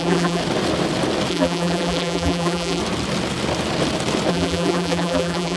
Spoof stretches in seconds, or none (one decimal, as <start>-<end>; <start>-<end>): 0.0-0.4; 1.3-2.8; 4.3-5.6